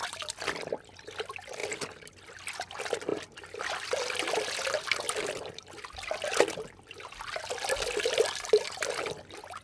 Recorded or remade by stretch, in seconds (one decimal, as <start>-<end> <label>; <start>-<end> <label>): 0.0-9.6 recorded